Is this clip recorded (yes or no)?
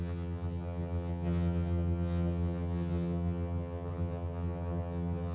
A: no